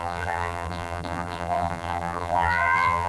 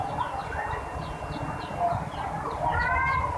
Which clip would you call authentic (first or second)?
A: second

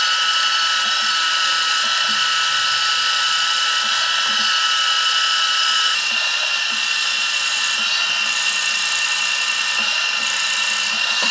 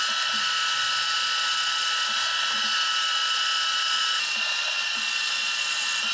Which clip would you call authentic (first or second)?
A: second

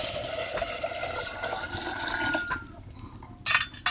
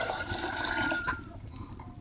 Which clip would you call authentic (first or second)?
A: first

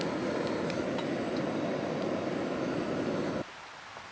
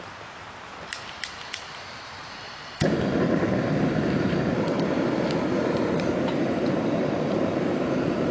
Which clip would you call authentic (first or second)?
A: first